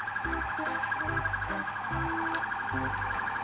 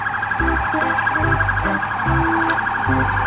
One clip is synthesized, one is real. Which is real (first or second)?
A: second